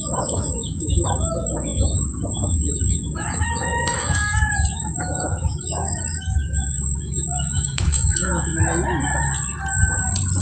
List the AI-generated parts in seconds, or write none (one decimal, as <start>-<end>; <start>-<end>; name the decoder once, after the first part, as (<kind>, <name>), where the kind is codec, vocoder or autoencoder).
0.0-8.5 (autoencoder, DAC-VAE)